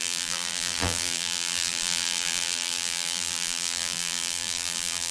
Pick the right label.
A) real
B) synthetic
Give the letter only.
B